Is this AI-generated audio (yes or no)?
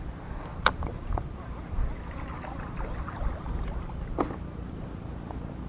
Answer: no